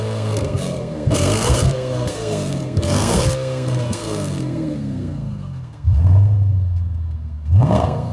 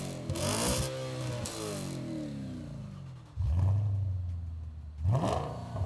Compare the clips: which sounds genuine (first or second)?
second